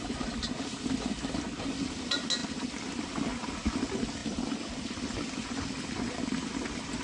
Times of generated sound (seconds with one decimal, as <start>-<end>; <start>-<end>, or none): none